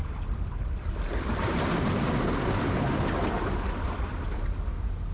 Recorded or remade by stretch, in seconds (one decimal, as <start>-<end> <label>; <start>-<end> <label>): 0.0-2.0 remade; 2.0-5.1 recorded